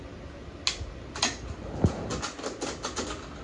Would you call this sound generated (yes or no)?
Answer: no